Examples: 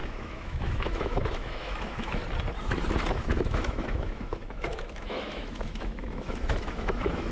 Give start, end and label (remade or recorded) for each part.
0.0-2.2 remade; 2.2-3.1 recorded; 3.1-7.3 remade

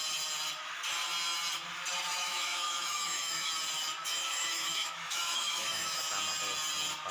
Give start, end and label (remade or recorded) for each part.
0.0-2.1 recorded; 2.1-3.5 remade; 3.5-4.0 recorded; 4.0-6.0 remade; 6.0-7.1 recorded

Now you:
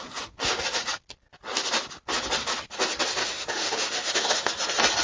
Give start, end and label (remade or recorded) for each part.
0.0-3.2 recorded; 3.2-4.5 remade; 4.5-5.0 recorded